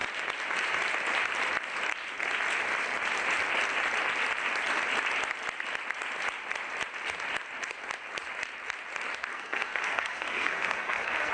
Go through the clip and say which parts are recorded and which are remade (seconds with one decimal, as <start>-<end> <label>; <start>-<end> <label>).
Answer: 0.0-9.3 recorded; 9.3-11.3 remade